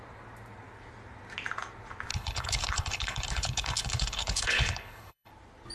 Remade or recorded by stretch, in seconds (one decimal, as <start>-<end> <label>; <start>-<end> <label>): 0.0-2.1 recorded; 2.1-5.3 remade; 5.3-5.7 recorded